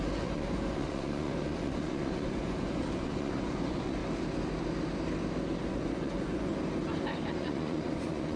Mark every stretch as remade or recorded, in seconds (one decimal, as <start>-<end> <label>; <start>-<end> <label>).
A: 0.0-4.0 remade; 4.0-5.7 recorded; 5.7-6.5 remade; 6.5-7.3 recorded; 7.3-8.4 remade